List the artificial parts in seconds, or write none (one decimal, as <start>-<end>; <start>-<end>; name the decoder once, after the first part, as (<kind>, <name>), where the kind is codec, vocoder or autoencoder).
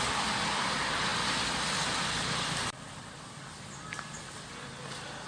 none